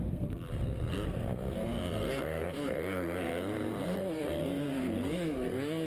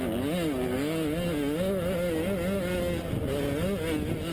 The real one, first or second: second